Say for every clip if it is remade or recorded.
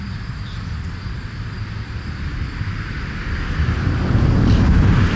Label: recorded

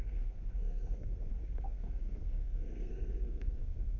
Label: remade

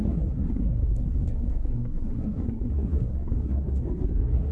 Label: remade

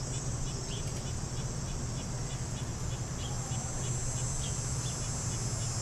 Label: recorded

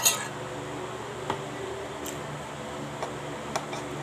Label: recorded